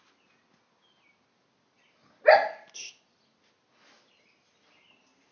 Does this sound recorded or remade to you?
recorded